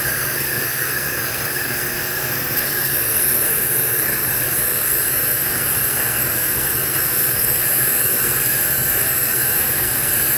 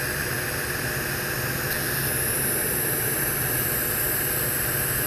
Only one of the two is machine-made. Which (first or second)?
first